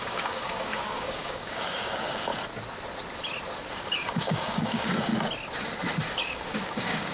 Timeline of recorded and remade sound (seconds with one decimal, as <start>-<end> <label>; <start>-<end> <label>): 0.0-2.3 remade; 2.3-3.7 recorded; 3.7-5.1 remade; 5.1-6.1 recorded; 6.1-7.1 remade

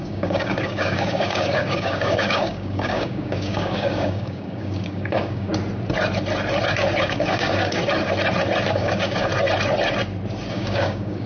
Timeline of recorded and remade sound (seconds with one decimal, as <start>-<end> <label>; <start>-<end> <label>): 0.0-5.5 remade; 5.5-7.0 recorded; 7.0-7.8 remade; 7.8-8.7 recorded; 8.7-9.3 remade; 9.3-10.5 recorded; 10.5-11.3 remade

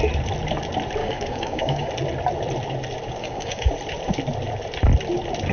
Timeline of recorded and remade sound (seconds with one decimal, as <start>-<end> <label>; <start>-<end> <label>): 0.0-1.0 recorded; 1.0-1.9 remade; 1.9-3.2 recorded; 3.2-3.7 remade; 3.7-5.5 recorded

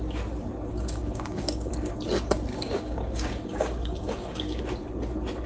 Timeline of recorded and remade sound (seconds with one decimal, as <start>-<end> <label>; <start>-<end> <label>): 0.0-0.7 recorded; 0.7-1.7 remade; 1.7-2.5 recorded; 2.5-4.6 remade; 4.6-5.5 recorded